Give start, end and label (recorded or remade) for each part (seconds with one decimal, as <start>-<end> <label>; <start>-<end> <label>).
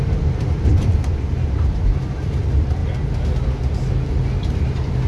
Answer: 0.0-5.1 recorded